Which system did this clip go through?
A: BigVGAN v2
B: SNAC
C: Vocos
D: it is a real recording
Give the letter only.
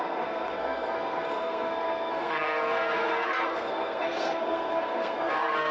B